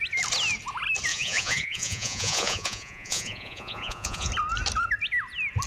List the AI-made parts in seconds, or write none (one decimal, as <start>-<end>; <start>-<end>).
1.1-4.3